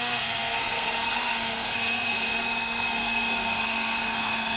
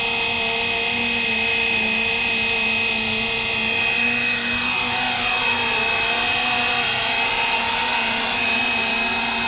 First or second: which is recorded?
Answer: second